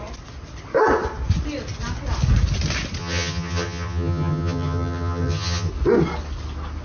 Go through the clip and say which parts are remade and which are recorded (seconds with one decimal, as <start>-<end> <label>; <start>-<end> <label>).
0.0-3.0 recorded; 3.0-5.7 remade; 5.7-6.8 recorded